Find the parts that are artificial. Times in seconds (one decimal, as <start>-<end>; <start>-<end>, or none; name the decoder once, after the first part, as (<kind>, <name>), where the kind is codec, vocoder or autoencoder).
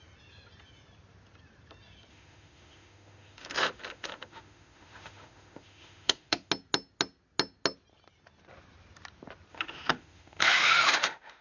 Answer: 2.1-6.5 (autoencoder, DAC-VAE); 9.5-11.4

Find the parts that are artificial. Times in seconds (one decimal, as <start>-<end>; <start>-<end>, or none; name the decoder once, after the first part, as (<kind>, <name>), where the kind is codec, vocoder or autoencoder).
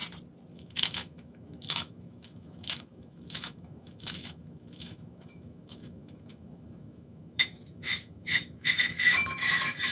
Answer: 0.5-9.9 (autoencoder, DAC-VAE)